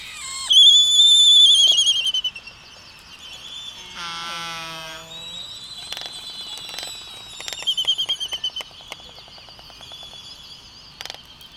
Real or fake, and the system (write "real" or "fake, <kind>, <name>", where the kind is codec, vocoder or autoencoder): real